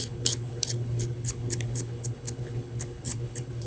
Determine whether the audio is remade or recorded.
remade